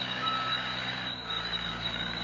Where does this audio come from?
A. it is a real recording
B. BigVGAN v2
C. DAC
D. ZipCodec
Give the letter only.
C